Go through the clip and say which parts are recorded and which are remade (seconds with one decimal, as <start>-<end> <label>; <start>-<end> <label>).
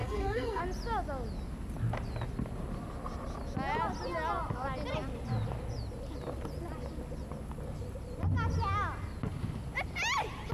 0.0-0.6 remade; 0.6-10.5 recorded